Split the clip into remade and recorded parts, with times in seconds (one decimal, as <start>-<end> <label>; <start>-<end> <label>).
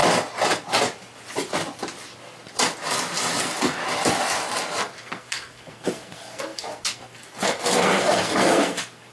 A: 0.0-3.4 recorded; 3.4-3.8 remade; 3.8-4.8 recorded; 4.8-9.1 remade